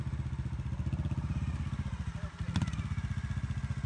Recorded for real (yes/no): yes